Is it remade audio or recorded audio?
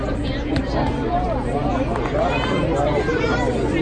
recorded